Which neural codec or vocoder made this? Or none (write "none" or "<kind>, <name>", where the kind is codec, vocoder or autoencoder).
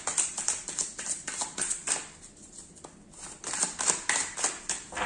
none